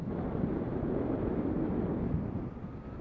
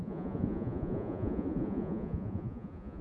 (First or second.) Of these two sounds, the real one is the first